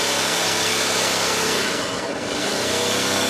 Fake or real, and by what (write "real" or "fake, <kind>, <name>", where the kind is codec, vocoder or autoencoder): fake, codec, SNAC